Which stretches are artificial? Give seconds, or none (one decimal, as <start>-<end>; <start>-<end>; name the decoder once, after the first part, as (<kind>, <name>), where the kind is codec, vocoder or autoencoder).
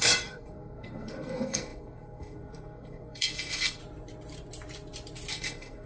0.0-3.8 (codec, SNAC); 5.3-5.9